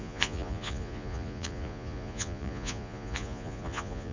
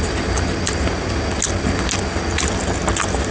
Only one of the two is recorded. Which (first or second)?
second